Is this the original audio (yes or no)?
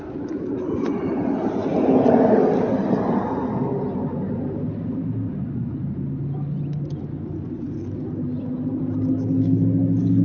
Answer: yes